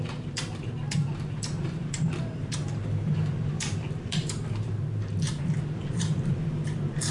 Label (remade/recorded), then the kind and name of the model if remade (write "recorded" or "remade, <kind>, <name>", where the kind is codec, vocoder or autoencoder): remade, vocoder, BigVGAN v2